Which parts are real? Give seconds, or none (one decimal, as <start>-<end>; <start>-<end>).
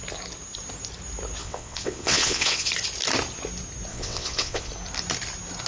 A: 0.0-1.4; 2.7-3.9; 4.7-5.7